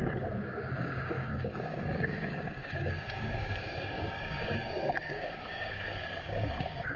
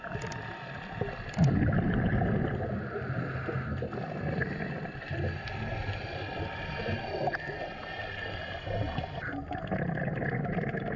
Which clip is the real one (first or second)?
second